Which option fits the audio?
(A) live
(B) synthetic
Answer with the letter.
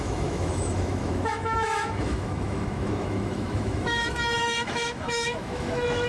B